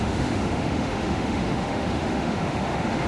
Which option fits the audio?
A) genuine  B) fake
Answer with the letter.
B